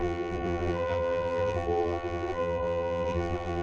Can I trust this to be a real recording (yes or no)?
no